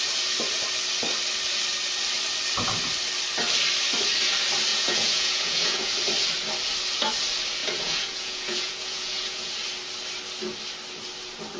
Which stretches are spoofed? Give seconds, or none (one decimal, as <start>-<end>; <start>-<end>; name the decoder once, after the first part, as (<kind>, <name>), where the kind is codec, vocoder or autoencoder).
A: 4.7-5.9 (vocoder, Vocos); 7.6-9.5